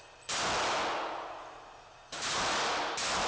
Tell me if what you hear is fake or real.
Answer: real